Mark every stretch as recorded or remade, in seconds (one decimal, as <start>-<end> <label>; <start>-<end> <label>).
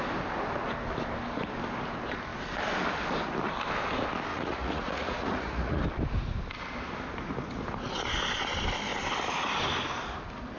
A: 0.0-4.3 recorded; 4.3-5.8 remade; 5.8-10.6 recorded